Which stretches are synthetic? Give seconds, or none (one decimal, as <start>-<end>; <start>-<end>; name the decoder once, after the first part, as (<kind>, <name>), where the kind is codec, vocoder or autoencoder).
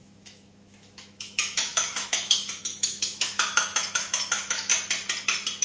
0.0-4.7 (autoencoder, DAC-VAE)